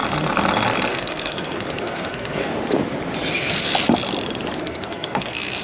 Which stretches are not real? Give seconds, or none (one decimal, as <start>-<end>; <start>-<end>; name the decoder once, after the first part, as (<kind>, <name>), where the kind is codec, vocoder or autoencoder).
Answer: 0.9-2.5 (codec, SNAC); 3.3-3.7; 4.6-5.6